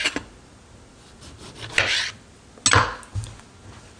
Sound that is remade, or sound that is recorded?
recorded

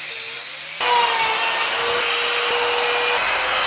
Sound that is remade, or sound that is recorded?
recorded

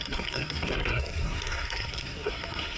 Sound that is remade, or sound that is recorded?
remade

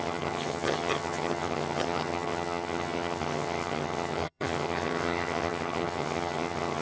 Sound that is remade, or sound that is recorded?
remade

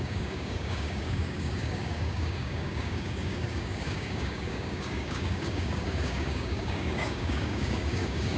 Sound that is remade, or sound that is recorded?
remade